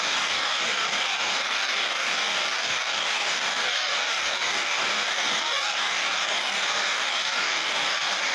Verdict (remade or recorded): remade